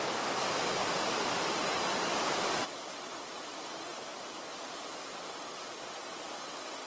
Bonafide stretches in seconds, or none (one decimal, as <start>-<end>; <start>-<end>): 0.0-3.9; 4.4-6.9